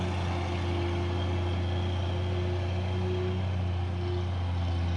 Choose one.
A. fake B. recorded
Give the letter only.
B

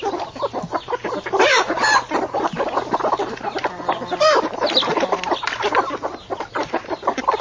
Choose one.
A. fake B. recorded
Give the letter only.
B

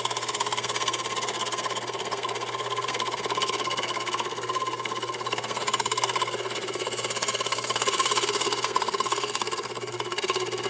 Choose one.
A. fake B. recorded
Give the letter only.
A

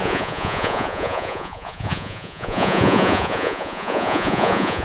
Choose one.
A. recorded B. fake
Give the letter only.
B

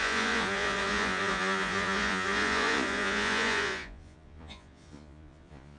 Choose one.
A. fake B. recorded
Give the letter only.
A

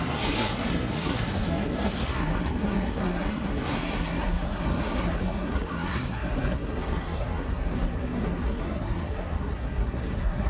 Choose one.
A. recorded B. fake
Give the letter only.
B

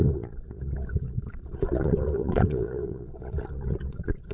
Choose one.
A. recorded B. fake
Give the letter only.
B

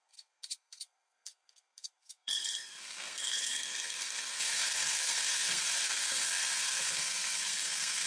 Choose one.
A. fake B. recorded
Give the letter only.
A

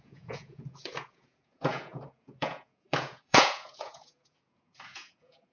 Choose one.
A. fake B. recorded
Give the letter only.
A